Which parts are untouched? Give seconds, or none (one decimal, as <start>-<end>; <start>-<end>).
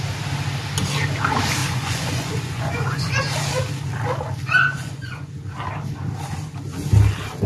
0.0-1.6; 3.2-4.6; 5.3-7.5